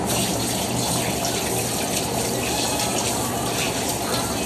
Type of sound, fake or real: real